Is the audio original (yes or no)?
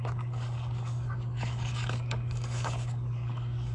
no